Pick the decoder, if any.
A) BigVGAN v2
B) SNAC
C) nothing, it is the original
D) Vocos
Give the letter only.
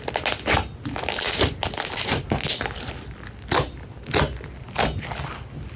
C